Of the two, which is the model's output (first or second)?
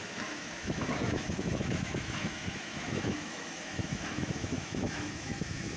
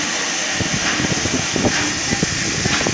first